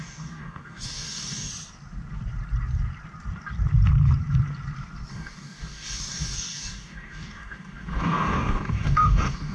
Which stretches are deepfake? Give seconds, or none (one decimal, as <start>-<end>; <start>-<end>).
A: 0.0-1.5; 5.1-9.5